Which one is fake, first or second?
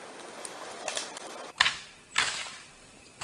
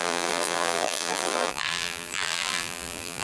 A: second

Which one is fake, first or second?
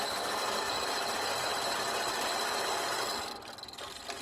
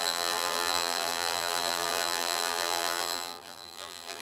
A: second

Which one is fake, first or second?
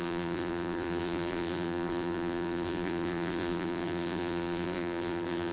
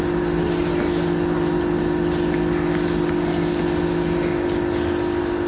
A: first